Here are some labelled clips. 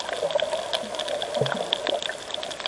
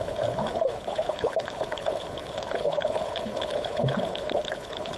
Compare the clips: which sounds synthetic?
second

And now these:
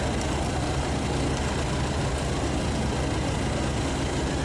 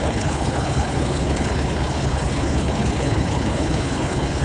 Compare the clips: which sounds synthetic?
second